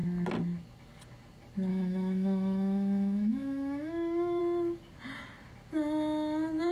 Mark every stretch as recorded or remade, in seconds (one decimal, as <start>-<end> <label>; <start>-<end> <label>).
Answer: 0.0-1.7 recorded; 1.7-4.4 remade; 4.4-6.7 recorded